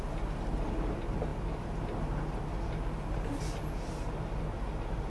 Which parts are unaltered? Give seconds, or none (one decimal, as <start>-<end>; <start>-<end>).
0.0-5.1